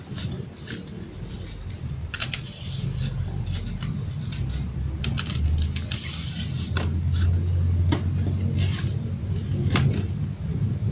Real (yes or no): yes